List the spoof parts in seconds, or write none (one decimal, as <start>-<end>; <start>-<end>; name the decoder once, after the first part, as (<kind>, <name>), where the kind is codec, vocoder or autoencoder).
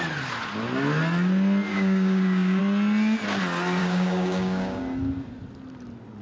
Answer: 1.7-2.6 (codec, DAC); 3.8-4.8